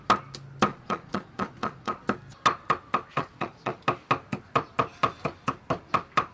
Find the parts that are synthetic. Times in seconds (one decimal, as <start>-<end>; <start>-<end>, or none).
0.7-1.9; 3.1-3.8